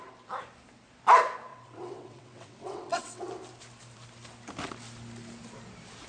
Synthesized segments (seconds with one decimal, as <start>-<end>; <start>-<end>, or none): 1.5-3.2